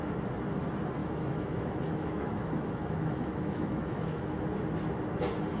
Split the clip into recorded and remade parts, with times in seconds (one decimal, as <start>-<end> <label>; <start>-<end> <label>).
0.0-1.0 recorded; 1.0-4.4 remade; 4.4-5.6 recorded